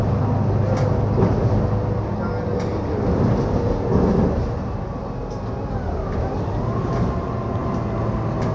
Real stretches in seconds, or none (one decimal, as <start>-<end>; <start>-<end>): 0.0-8.5